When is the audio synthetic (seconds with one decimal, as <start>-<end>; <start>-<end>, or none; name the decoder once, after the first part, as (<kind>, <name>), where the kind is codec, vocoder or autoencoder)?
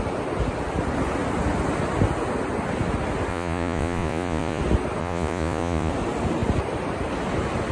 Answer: 3.3-4.6 (vocoder, Vocos); 5.0-5.9